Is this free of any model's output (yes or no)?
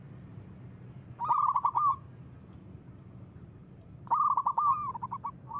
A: yes